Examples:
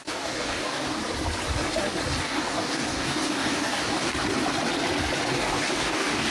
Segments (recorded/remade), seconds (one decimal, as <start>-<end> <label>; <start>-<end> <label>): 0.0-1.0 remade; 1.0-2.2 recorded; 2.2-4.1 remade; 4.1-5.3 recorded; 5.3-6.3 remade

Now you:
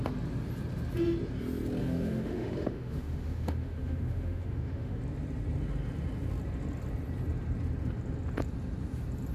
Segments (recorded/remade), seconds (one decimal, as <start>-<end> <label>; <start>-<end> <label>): 0.0-1.8 recorded; 1.8-5.0 remade; 5.0-9.3 recorded

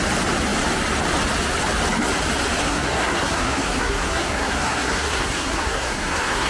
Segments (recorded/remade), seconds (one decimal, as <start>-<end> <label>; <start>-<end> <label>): 0.0-2.6 recorded; 2.6-6.5 remade

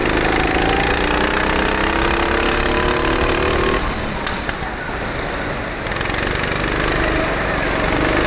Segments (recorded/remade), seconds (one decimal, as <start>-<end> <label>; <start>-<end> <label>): 0.0-8.3 recorded

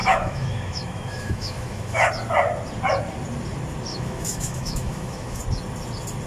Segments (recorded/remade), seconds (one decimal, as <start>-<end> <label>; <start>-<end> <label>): 0.0-2.1 remade; 2.1-3.9 recorded; 3.9-5.4 remade; 5.4-6.3 recorded

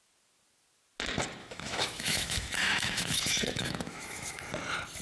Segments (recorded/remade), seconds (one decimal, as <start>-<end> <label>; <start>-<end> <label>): 0.0-1.4 recorded; 1.4-4.4 remade; 4.4-5.0 recorded

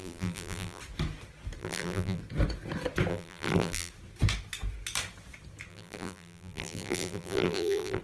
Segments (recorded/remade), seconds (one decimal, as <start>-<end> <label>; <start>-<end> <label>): 0.0-0.8 remade; 0.8-1.6 recorded; 1.6-2.2 remade; 2.2-3.1 recorded; 3.1-3.9 remade; 3.9-5.7 recorded; 5.7-8.0 remade

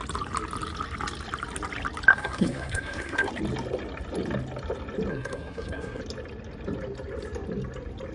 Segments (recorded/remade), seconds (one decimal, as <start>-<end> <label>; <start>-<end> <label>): 0.0-2.1 recorded; 2.1-3.3 remade; 3.3-5.1 recorded; 5.1-6.0 remade; 6.0-8.1 recorded